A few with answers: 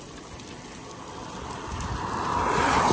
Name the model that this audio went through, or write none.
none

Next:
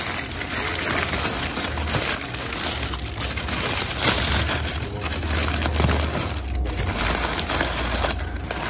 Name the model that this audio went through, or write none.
none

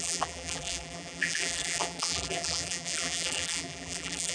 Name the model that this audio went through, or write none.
vocoder, BigVGAN v2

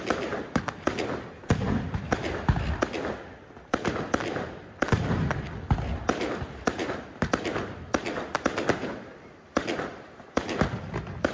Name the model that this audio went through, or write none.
none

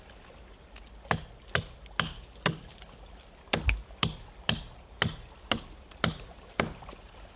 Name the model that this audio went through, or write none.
none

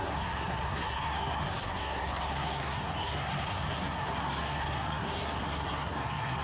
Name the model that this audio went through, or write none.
codec, SNAC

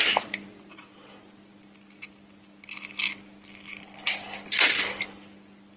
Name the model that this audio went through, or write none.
none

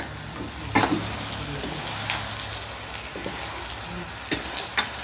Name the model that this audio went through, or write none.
none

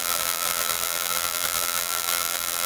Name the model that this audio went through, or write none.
vocoder, BigVGAN v2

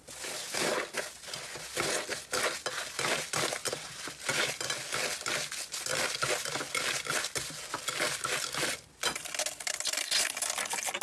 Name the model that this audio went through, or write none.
none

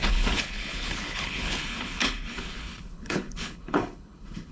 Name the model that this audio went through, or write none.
codec, HILCodec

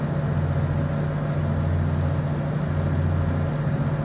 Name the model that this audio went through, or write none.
none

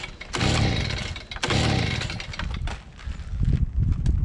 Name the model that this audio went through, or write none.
none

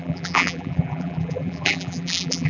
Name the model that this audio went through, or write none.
vocoder, BigVGAN v2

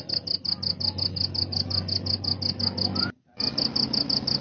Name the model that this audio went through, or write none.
none